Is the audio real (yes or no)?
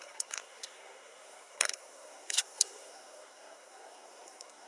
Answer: no